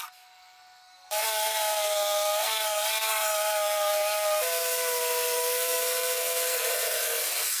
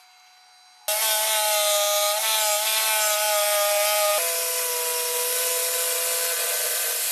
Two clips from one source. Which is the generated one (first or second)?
first